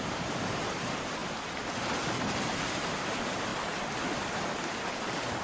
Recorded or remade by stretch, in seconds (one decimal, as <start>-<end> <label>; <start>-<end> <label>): 0.0-1.2 remade; 1.2-2.7 recorded; 2.7-3.5 remade; 3.5-4.3 recorded; 4.3-5.4 remade